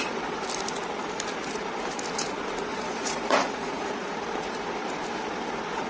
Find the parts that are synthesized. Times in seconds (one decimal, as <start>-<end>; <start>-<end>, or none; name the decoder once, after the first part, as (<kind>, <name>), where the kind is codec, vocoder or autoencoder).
2.7-4.1 (vocoder, Vocos)